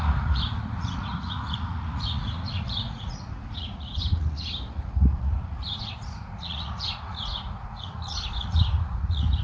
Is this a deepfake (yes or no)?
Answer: yes